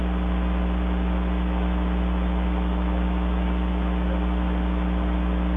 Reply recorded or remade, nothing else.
recorded